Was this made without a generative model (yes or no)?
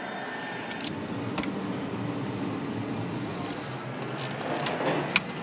yes